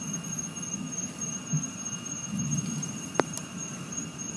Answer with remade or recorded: remade